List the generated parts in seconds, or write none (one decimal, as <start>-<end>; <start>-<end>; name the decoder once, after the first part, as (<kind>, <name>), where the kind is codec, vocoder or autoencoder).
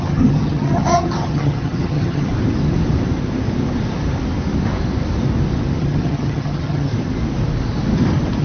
0.0-2.3 (vocoder, HiFi-GAN); 5.8-6.9